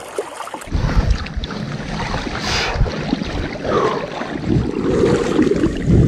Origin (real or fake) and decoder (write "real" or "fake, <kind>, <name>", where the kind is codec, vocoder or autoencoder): real